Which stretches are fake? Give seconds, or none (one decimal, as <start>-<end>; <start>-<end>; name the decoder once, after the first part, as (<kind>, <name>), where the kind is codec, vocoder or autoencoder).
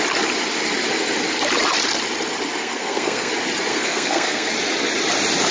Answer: 2.6-3.3 (codec, SNAC); 3.7-4.5